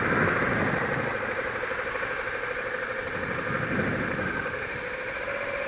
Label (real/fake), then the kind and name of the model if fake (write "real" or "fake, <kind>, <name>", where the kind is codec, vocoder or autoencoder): real